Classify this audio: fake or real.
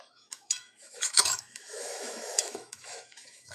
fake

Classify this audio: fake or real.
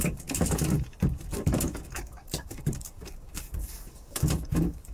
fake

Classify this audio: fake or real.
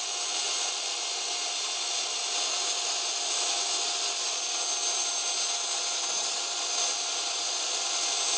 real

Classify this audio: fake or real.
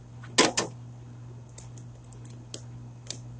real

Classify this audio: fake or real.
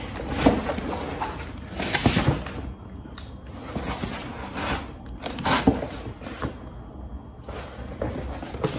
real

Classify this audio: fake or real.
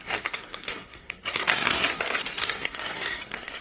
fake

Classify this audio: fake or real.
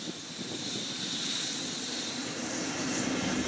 real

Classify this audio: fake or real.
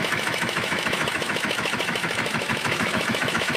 fake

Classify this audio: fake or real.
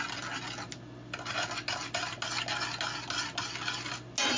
real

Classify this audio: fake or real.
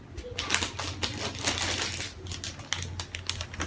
real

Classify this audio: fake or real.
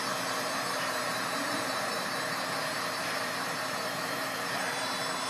fake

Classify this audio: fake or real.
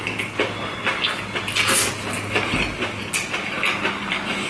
real